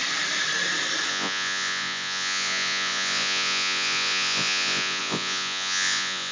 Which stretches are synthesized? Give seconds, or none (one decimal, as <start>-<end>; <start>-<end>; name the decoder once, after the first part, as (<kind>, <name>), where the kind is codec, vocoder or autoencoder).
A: 1.1-6.3 (vocoder, Vocos)